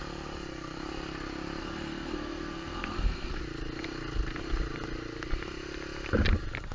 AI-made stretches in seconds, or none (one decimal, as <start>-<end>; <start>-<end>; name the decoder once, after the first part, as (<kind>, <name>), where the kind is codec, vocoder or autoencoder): 1.6-3.4 (codec, SNAC)